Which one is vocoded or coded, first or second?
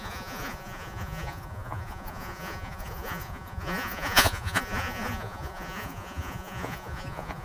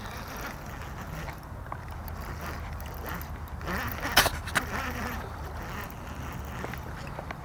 first